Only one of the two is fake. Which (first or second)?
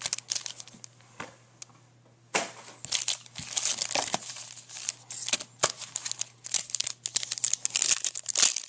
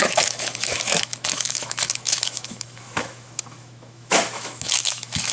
second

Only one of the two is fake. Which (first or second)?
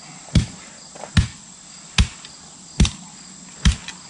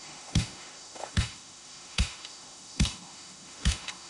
second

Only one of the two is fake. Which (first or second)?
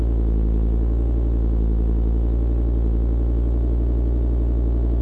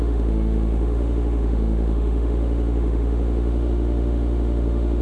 second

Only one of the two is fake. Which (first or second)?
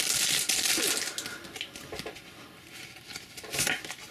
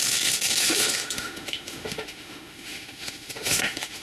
second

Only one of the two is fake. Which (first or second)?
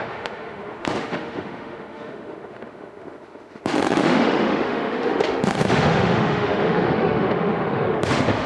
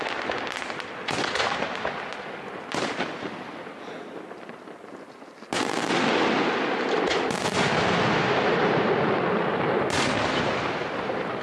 first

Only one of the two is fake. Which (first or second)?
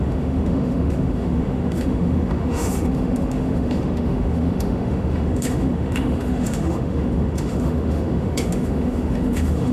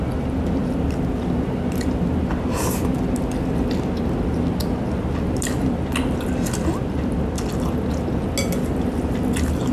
first